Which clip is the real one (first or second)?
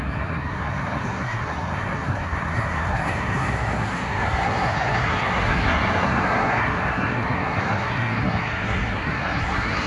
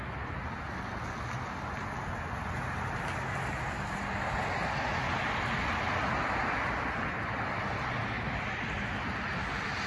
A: second